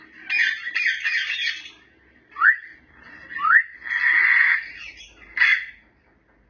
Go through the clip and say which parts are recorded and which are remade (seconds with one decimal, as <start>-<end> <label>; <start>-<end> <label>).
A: 0.0-0.4 recorded; 0.4-4.3 remade; 4.3-5.5 recorded; 5.5-6.1 remade; 6.1-6.5 recorded